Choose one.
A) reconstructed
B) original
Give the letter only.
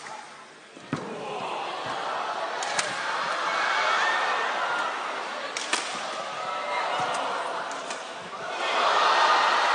B